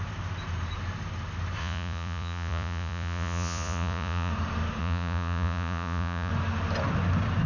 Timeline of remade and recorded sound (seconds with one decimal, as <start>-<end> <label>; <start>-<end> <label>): 0.0-1.6 recorded; 1.6-4.3 remade; 4.3-4.8 recorded; 4.8-6.3 remade; 6.3-7.5 recorded